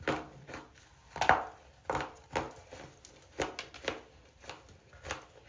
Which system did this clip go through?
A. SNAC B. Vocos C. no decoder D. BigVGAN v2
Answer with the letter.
C